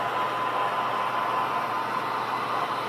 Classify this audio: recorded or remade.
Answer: recorded